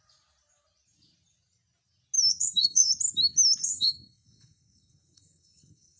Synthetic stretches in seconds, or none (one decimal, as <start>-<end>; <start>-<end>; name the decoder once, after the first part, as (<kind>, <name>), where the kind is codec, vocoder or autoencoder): 2.3-2.9 (codec, SNAC); 3.6-6.0